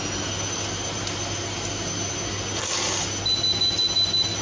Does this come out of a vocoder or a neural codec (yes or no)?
no